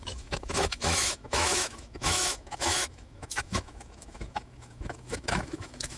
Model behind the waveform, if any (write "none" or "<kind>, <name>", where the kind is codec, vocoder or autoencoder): autoencoder, DAC-VAE